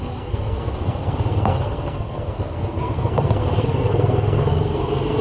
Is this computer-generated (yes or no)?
yes